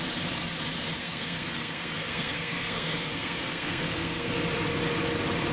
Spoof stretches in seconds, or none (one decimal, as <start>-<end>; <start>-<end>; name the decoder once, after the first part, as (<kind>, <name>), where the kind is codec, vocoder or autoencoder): 1.0-4.3 (codec, SNAC)